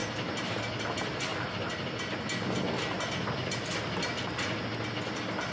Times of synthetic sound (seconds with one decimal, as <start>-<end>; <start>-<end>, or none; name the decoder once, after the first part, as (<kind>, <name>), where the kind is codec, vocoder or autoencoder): none